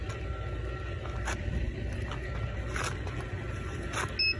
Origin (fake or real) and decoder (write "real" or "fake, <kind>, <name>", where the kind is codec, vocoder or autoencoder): real